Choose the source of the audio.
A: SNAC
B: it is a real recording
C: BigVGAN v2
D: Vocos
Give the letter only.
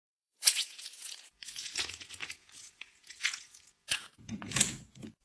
D